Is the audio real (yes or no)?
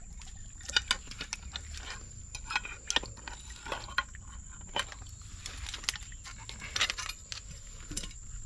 yes